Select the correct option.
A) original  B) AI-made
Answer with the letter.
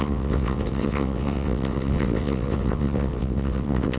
B